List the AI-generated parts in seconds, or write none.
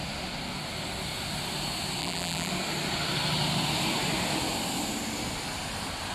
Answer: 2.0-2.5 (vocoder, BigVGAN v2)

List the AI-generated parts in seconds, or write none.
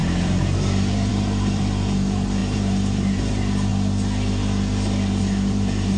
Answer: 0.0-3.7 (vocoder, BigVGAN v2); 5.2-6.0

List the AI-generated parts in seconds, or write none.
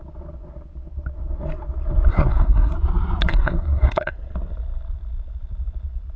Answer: 2.1-2.7 (codec, SNAC); 3.3-4.1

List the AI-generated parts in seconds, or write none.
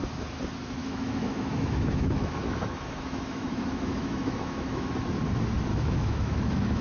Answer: 0.8-4.9 (autoencoder, DAC-VAE); 5.7-6.8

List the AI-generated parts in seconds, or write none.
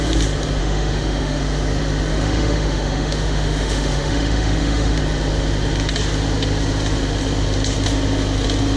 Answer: 0.6-1.4 (autoencoder, DAC-VAE); 2.1-5.0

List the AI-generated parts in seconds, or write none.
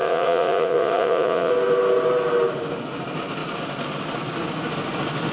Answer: 0.0-1.5 (vocoder, Vocos)